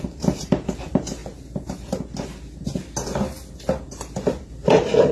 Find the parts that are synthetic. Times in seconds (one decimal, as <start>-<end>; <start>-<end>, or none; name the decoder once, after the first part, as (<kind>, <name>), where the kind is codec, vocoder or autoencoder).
0.0-1.2 (vocoder, BigVGAN v2); 4.3-5.1